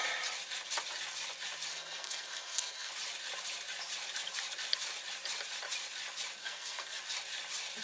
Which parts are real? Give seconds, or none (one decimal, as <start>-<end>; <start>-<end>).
0.0-1.7; 2.9-6.4; 7.0-7.8